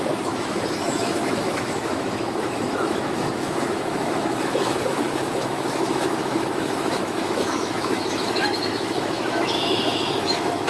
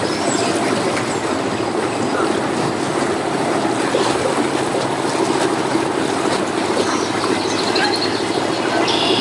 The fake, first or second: first